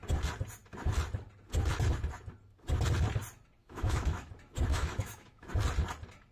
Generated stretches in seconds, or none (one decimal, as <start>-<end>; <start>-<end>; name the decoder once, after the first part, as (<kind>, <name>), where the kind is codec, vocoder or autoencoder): 3.6-4.3 (autoencoder, DAC-VAE); 4.7-5.5